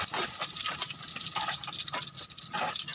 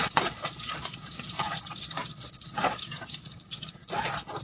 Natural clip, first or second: first